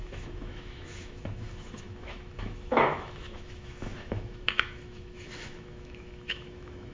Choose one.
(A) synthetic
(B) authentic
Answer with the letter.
A